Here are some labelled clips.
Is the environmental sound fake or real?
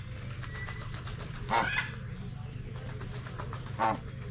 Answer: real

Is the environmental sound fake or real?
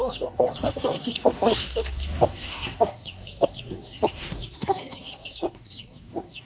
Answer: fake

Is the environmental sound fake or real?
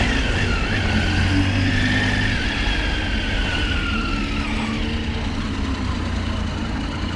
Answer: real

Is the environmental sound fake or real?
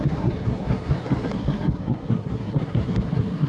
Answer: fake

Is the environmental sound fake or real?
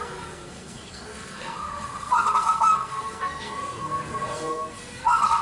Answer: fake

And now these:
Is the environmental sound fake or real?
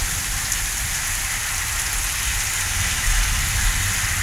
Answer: real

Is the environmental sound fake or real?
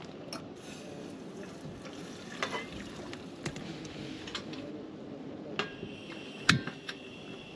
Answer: real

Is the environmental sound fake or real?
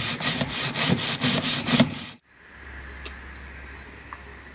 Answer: real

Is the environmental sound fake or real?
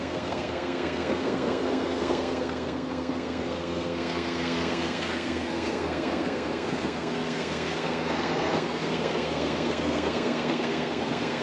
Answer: fake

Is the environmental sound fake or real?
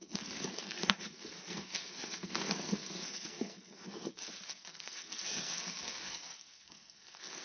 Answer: fake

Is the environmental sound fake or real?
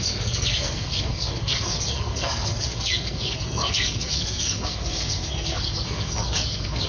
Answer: fake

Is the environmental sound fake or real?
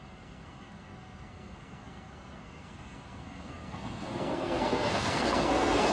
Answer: fake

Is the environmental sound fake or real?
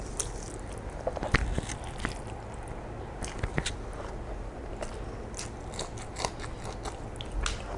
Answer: real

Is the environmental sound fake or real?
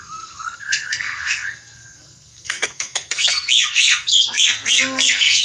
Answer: fake